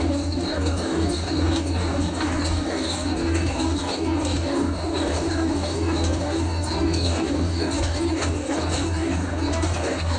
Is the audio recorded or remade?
remade